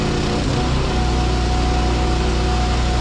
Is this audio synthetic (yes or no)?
no